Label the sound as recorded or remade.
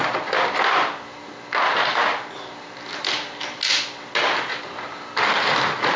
recorded